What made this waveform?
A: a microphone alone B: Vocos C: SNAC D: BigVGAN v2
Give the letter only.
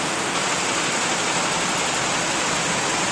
A